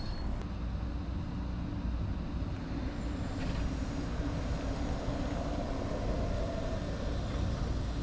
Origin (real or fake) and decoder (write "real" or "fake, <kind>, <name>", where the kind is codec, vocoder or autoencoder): real